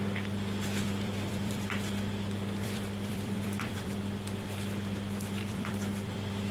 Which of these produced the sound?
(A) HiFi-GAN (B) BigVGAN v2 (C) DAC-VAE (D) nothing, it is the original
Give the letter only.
B